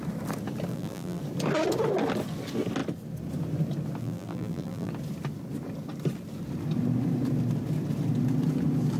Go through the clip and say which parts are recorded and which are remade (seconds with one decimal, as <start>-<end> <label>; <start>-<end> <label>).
0.0-0.7 recorded; 0.7-1.2 remade; 1.2-4.0 recorded; 4.0-4.9 remade; 4.9-9.0 recorded